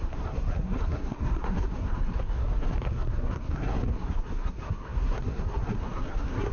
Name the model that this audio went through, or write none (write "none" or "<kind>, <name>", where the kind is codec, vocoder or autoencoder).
codec, SNAC